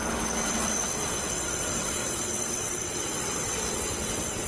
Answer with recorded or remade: remade